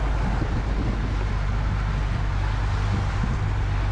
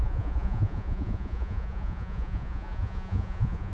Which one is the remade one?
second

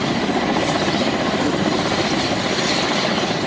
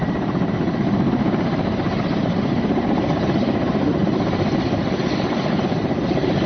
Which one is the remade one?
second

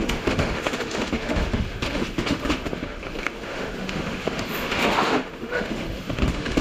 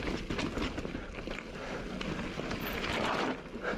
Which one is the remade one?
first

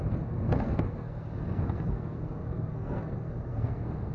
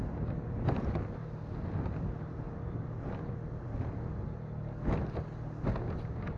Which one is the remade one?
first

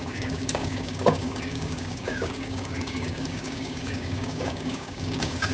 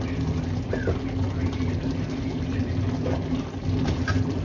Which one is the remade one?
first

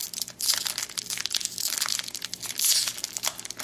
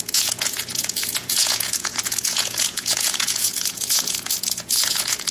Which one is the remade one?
second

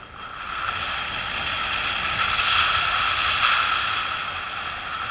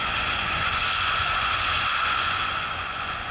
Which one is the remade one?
second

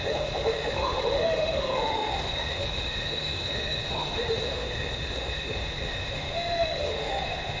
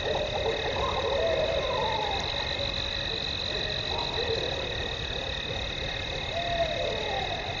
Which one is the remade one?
first